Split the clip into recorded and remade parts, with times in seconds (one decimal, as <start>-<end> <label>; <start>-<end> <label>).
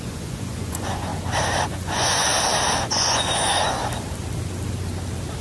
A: 0.0-1.1 remade; 1.1-1.7 recorded; 1.7-2.3 remade; 2.3-2.9 recorded; 2.9-3.8 remade; 3.8-5.4 recorded